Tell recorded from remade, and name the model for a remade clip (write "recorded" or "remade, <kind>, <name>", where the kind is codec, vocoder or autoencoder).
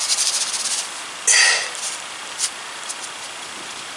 recorded